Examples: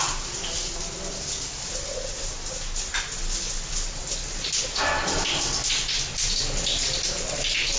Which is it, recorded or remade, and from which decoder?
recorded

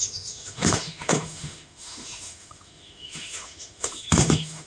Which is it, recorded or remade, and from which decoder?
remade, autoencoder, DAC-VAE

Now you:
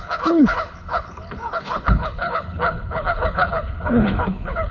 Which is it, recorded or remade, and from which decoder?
remade, codec, HILCodec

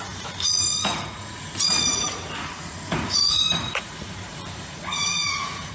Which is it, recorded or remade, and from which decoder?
remade, vocoder, Vocos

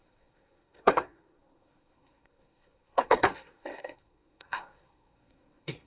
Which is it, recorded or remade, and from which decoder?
remade, codec, SNAC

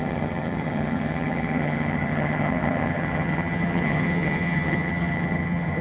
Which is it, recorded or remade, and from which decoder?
remade, vocoder, HiFi-GAN